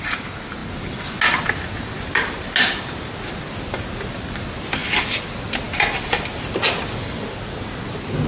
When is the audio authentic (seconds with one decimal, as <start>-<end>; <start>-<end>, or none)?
0.0-8.3